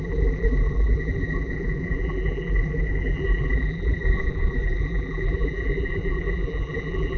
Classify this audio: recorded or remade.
remade